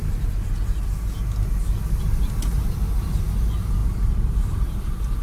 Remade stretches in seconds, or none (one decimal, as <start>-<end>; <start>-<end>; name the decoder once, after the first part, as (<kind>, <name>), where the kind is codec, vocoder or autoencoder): 0.0-0.5 (vocoder, BigVGAN v2)